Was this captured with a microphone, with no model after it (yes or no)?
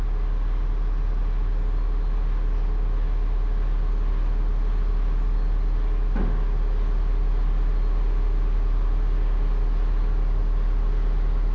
yes